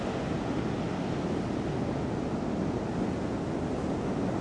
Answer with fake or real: real